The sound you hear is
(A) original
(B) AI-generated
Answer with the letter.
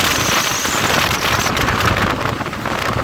A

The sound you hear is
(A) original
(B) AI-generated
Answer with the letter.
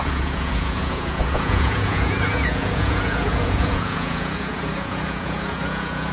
B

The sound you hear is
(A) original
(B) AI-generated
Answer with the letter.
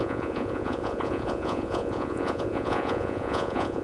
B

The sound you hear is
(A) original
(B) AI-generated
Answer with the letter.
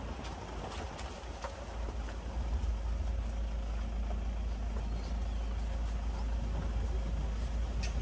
A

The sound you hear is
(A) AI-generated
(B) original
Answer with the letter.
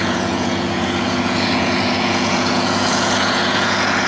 A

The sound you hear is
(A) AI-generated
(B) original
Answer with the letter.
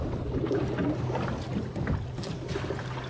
B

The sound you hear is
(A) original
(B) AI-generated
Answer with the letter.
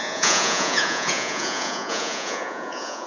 B